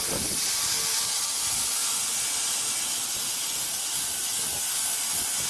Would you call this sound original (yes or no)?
yes